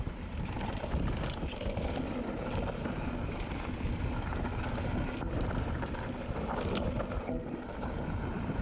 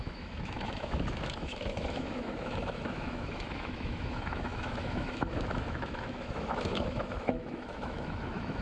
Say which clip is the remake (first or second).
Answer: second